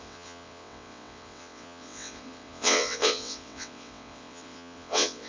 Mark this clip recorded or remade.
remade